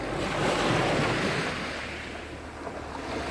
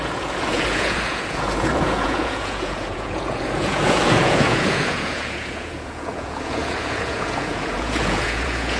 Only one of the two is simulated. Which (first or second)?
second